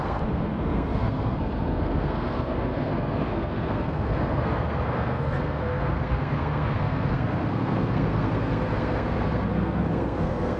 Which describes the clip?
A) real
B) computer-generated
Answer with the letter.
B